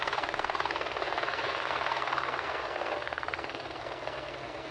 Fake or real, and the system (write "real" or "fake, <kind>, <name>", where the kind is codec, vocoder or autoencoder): fake, codec, SNAC